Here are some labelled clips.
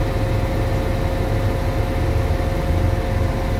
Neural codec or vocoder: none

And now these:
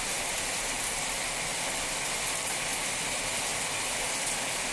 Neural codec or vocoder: vocoder, BigVGAN v2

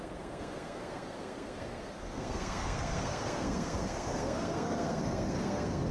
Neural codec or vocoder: codec, SNAC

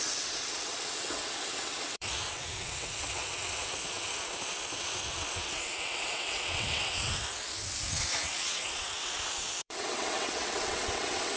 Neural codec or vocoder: vocoder, WaveNeXt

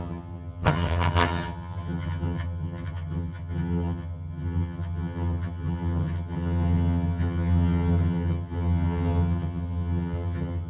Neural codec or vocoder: vocoder, HiFi-GAN